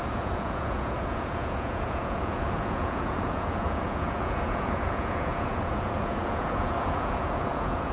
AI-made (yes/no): yes